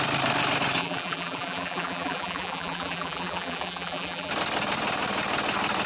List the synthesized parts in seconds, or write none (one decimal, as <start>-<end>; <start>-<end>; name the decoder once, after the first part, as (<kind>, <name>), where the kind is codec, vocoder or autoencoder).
0.8-4.3 (vocoder, BigVGAN v2)